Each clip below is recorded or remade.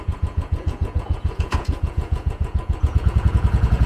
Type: remade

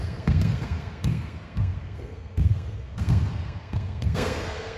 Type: remade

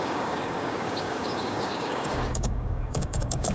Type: remade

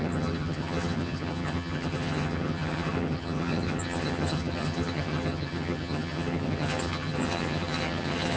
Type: remade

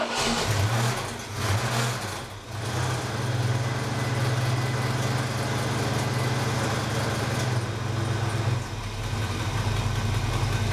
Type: recorded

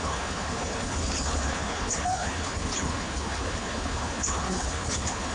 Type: remade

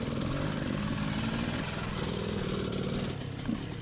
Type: recorded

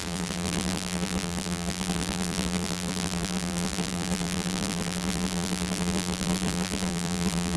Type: remade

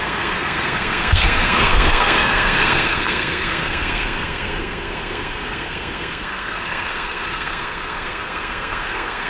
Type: remade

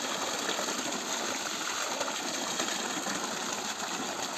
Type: recorded